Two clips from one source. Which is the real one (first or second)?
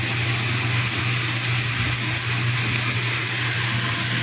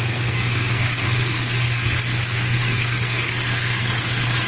first